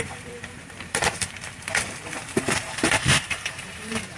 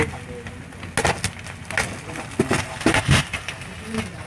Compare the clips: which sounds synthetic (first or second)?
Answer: first